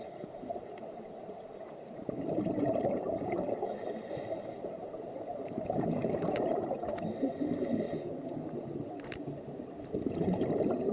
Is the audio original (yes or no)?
no